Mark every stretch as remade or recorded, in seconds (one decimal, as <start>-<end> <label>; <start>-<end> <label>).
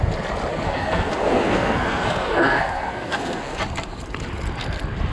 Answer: 0.0-0.5 recorded; 0.5-3.6 remade; 3.6-5.1 recorded